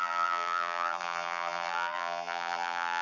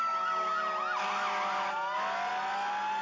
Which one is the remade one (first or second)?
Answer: first